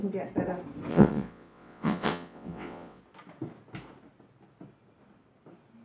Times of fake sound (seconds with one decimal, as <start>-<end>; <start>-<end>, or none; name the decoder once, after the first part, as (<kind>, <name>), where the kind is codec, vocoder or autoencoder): 0.9-3.0 (vocoder, WaveNeXt)